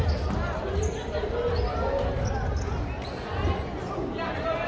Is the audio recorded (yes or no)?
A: yes